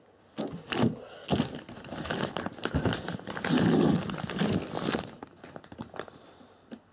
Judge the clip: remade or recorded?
recorded